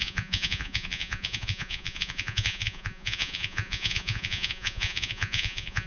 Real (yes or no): no